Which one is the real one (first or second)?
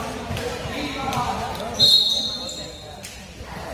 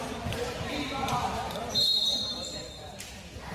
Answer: first